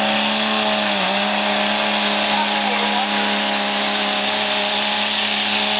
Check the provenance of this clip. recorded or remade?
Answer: recorded